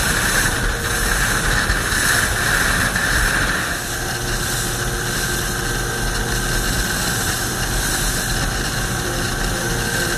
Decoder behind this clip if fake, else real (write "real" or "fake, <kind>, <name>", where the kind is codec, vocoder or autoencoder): real